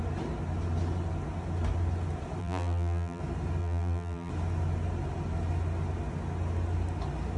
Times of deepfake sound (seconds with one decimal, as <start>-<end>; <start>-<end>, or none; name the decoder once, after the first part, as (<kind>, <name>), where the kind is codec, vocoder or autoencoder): 2.4-3.2 (vocoder, BigVGAN v2); 3.6-4.3